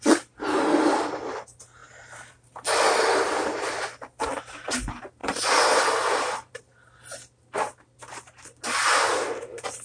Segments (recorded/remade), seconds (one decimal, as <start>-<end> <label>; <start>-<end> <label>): 0.0-9.8 recorded